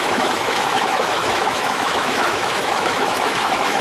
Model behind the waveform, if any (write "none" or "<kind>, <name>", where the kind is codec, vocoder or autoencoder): autoencoder, DAC-VAE